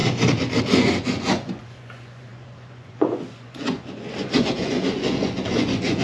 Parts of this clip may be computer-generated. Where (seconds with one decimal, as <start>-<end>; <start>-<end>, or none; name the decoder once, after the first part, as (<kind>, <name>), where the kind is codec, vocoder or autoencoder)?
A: 0.6-6.0 (vocoder, Vocos)